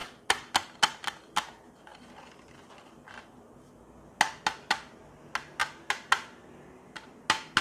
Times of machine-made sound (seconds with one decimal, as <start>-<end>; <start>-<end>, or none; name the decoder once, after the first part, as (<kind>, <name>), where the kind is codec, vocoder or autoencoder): none